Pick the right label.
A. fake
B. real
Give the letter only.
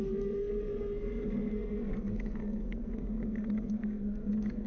A